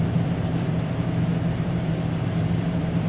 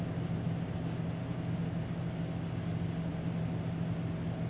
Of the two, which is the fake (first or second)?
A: first